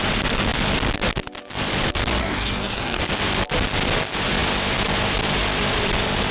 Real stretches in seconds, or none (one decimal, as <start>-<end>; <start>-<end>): 0.0-2.2; 3.0-6.3